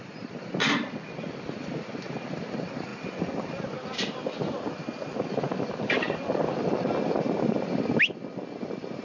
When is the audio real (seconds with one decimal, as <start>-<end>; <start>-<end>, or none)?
0.0-9.0